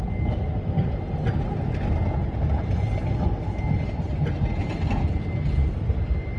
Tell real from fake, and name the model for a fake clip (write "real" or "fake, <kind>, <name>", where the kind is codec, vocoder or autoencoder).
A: real